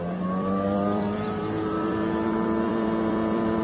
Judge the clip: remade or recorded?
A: remade